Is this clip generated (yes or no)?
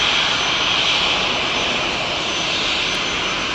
no